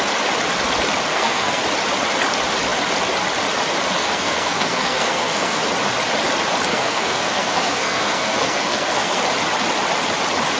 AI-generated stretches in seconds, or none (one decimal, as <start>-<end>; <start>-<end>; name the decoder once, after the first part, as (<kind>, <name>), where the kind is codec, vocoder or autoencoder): 1.1-1.6 (codec, SNAC); 4.0-5.6; 6.7-9.2